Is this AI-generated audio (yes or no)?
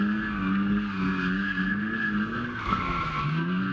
yes